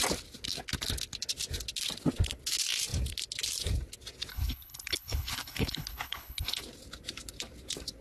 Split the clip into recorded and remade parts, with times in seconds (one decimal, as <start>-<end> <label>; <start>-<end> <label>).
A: 0.0-4.3 recorded; 4.3-6.6 remade; 6.6-8.0 recorded